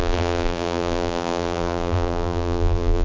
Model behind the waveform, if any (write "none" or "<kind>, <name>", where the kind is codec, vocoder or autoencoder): vocoder, BigVGAN v2